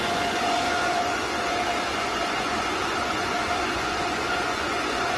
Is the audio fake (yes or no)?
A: yes